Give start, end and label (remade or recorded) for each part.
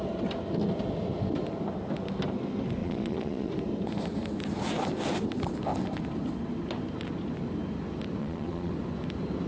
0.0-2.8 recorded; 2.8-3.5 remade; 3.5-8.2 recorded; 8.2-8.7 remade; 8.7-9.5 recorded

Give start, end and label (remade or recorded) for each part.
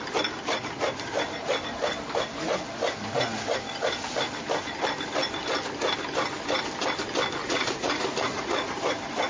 0.0-7.4 recorded; 7.4-8.8 remade; 8.8-9.3 recorded